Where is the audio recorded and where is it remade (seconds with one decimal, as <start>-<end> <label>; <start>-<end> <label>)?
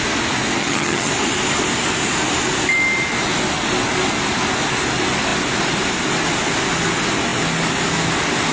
0.0-0.6 recorded; 0.6-1.1 remade; 1.1-8.5 recorded